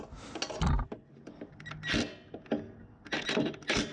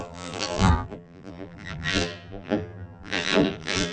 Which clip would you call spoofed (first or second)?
second